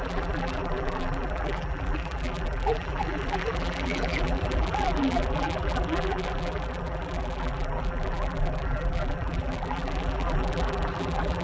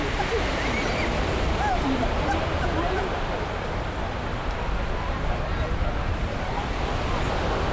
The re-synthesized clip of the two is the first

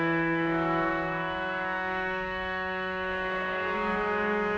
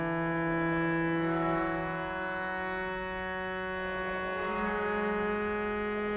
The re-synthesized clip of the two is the first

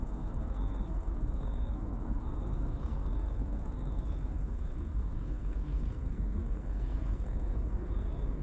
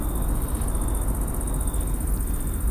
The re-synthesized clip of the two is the first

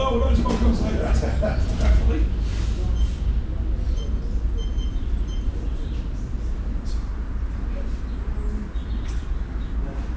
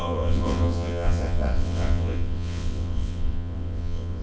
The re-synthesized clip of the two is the second